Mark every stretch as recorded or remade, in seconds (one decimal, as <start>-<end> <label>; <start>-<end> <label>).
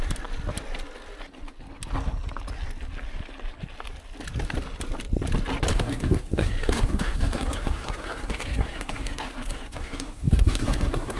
0.0-5.7 recorded; 5.7-11.2 remade